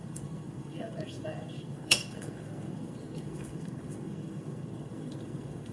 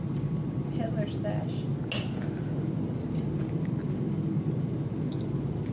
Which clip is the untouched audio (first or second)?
second